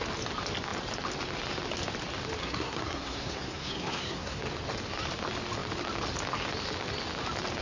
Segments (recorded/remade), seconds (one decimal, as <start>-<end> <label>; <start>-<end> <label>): 0.0-2.4 recorded; 2.4-4.4 remade; 4.4-7.6 recorded